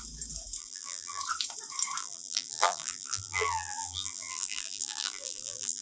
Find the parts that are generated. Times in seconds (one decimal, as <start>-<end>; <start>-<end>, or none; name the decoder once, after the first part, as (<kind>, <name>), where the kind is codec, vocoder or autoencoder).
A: 0.6-1.2 (vocoder, BigVGAN v2); 2.0-5.8